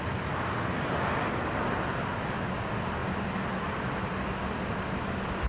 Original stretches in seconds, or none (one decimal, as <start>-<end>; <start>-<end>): 0.0-5.5